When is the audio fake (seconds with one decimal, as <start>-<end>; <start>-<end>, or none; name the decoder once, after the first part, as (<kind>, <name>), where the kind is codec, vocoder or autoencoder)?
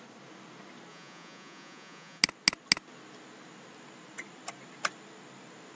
0.9-2.2 (vocoder, Vocos)